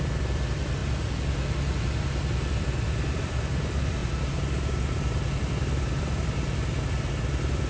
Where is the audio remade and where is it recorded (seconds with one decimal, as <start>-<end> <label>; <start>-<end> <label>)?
0.0-4.0 remade; 4.0-4.9 recorded; 4.9-7.7 remade

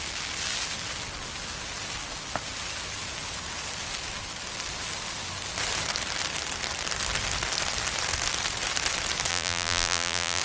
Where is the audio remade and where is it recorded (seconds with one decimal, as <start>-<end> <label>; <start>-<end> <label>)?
0.0-9.3 recorded; 9.3-10.4 remade